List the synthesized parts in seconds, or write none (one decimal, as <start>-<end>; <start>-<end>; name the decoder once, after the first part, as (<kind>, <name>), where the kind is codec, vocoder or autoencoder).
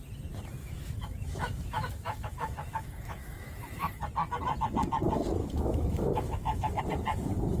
0.6-3.9 (autoencoder, DAC-VAE); 5.4-6.8